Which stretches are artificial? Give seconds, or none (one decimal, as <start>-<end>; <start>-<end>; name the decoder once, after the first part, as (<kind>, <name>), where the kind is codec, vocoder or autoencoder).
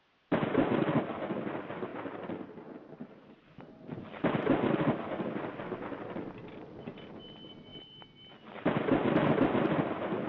none